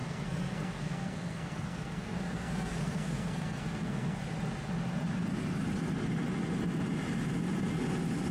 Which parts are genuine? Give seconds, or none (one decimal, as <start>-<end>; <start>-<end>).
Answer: 4.2-8.3